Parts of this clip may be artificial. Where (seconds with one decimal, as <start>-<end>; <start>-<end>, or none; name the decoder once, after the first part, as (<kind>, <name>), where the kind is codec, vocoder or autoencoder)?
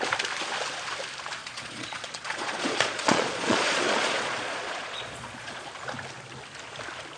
1.4-5.7 (vocoder, Vocos)